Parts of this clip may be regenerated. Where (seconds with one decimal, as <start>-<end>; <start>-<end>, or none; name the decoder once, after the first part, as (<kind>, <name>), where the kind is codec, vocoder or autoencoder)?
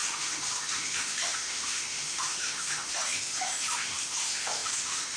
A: 0.0-5.2 (autoencoder, DAC-VAE)